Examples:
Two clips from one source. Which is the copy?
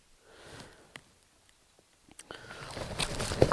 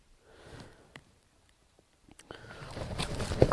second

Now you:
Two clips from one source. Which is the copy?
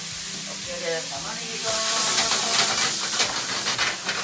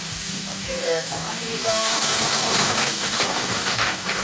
second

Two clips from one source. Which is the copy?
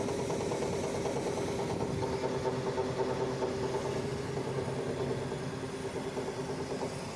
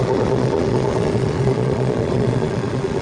second